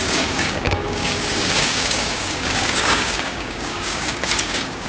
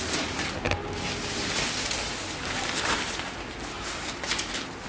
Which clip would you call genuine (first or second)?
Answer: second